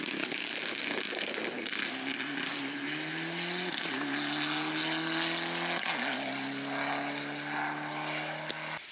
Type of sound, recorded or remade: recorded